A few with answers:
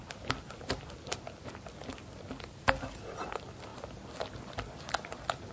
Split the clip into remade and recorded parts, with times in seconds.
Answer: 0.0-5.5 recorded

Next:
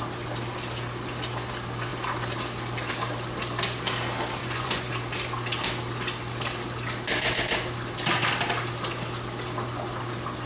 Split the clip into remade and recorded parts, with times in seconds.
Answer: 0.0-4.4 recorded; 4.4-4.9 remade; 4.9-10.5 recorded

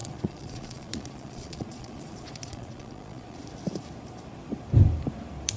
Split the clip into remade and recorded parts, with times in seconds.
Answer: 0.0-3.4 remade; 3.4-5.6 recorded